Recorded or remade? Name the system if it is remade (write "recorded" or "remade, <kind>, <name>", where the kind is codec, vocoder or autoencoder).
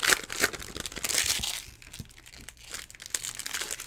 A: recorded